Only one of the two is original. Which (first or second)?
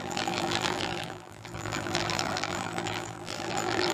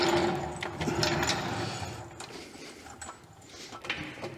second